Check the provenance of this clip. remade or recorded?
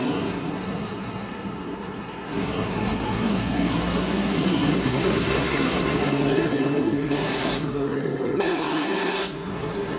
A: remade